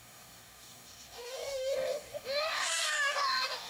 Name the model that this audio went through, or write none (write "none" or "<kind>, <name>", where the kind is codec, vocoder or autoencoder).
codec, DAC